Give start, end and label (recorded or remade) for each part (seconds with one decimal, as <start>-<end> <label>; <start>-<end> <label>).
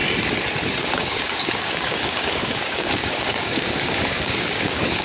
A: 0.0-0.8 recorded; 0.8-5.0 remade